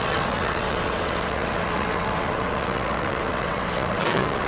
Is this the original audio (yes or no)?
no